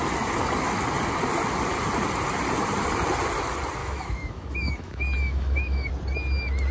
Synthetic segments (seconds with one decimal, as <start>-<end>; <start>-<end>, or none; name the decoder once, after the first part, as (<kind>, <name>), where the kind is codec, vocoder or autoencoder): 3.8-5.9 (autoencoder, DAC-VAE)